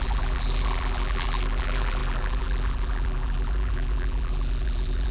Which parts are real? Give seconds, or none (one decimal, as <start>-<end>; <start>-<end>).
none